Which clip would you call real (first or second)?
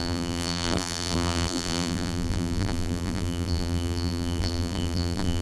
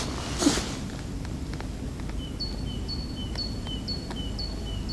second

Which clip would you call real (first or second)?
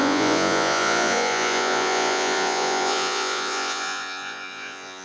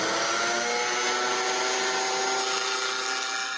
second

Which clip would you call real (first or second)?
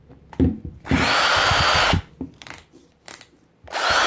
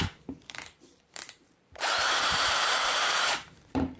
first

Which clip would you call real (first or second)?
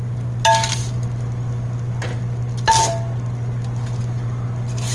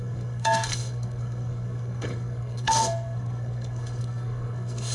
first